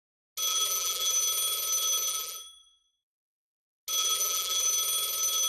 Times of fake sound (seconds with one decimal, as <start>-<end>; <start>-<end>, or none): 0.5-1.2; 2.1-3.3; 4.0-4.7